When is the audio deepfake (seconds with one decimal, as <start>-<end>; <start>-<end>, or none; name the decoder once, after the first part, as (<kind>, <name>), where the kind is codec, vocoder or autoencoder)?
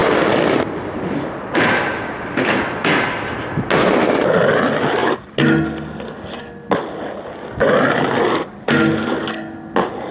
none